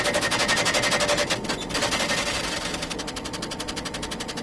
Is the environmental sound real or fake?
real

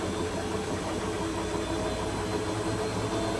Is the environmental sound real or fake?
real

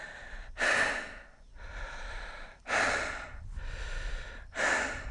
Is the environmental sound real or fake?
real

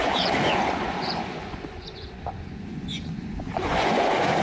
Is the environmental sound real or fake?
fake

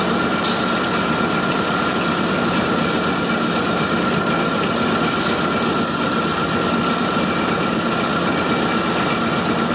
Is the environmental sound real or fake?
real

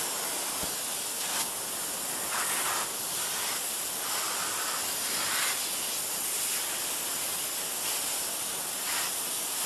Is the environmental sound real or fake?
real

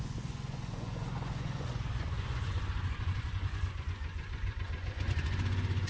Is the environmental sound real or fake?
fake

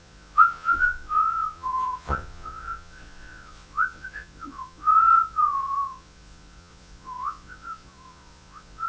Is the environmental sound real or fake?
fake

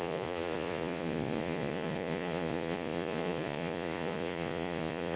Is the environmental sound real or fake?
fake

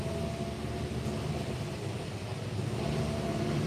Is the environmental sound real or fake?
real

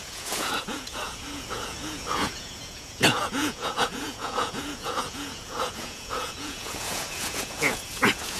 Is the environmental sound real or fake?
fake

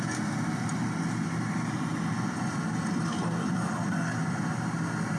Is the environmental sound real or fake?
real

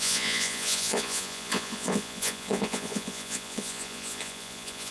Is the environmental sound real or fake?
fake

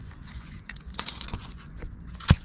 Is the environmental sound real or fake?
fake